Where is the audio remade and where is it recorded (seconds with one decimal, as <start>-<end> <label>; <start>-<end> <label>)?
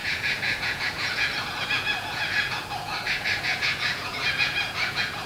0.0-2.9 remade; 2.9-3.4 recorded; 3.4-5.3 remade